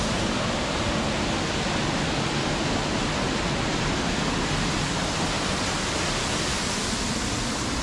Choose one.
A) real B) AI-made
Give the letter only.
A